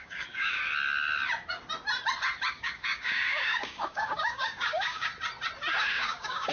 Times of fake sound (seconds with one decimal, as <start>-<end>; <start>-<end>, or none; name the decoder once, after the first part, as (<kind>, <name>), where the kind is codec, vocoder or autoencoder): 0.0-0.6 (codec, DAC); 2.5-5.1; 5.8-6.5